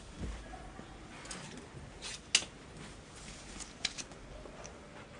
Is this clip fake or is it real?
real